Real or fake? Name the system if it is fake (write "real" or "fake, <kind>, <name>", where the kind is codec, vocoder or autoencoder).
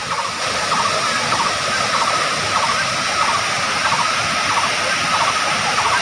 real